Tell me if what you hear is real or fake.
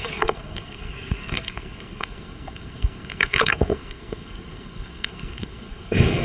fake